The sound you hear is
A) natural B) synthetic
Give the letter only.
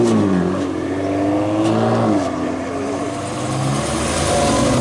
A